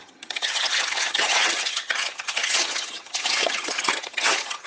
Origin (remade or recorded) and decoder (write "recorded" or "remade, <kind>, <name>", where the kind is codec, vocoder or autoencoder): remade, vocoder, HiFi-GAN